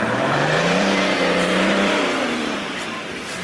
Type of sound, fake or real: fake